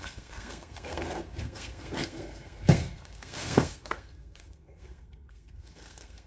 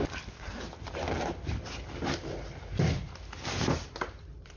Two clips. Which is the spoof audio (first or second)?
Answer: first